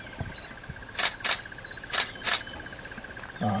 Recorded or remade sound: recorded